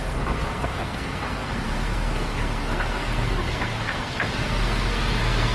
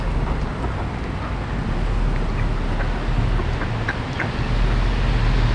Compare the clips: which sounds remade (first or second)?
first